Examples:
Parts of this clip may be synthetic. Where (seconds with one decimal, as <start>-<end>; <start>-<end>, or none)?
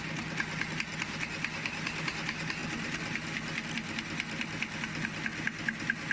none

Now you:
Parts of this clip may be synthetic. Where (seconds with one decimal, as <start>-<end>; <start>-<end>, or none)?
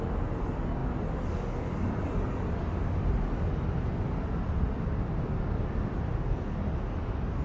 none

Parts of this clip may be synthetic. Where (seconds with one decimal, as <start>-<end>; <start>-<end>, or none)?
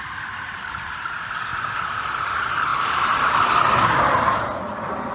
0.0-1.5; 2.2-2.7; 4.6-5.1